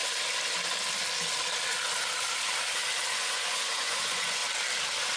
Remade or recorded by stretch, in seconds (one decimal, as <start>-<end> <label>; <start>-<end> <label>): 0.0-3.1 recorded; 3.1-4.4 remade; 4.4-5.2 recorded